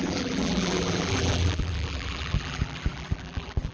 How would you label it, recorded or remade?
remade